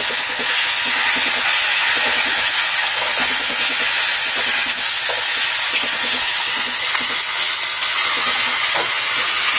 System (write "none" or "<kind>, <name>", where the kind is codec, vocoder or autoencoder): vocoder, Vocos